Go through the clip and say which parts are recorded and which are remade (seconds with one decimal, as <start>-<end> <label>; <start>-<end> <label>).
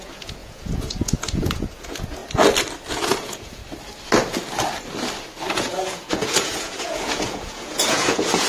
0.0-2.2 remade; 2.2-2.9 recorded; 2.9-3.6 remade; 3.6-5.5 recorded; 5.5-8.5 remade